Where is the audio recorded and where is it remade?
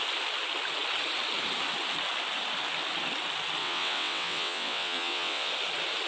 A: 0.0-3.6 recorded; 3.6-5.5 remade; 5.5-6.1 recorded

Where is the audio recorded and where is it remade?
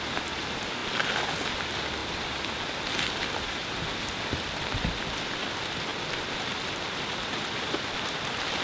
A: 0.0-8.6 recorded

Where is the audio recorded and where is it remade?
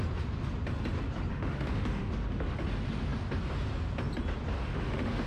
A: 0.0-1.3 recorded; 1.3-2.1 remade; 2.1-4.7 recorded; 4.7-5.3 remade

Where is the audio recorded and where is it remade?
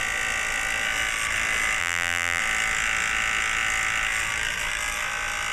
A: 0.0-1.8 recorded; 1.8-2.4 remade; 2.4-5.5 recorded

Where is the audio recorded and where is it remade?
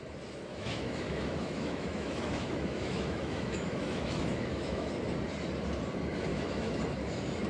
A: 0.0-0.5 recorded; 0.5-4.9 remade; 4.9-6.3 recorded; 6.3-6.8 remade; 6.8-7.5 recorded